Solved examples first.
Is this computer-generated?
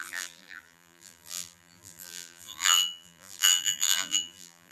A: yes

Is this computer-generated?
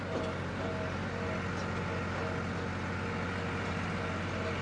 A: no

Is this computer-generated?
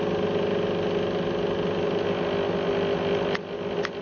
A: no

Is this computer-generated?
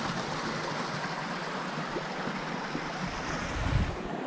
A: no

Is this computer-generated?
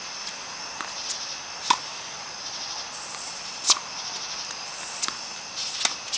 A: no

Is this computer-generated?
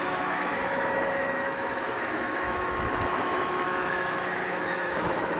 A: yes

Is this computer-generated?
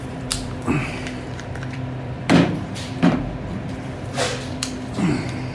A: yes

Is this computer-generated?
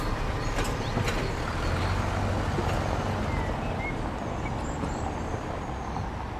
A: no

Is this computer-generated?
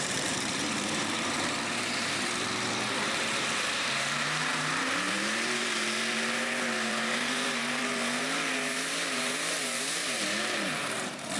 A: yes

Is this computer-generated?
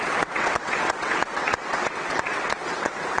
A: yes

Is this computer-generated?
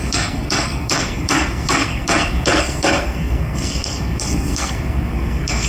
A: yes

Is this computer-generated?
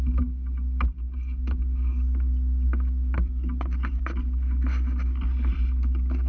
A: no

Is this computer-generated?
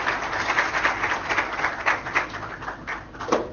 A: no